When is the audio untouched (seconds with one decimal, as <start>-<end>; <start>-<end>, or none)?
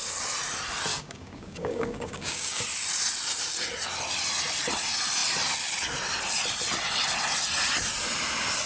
0.0-0.9; 2.6-8.7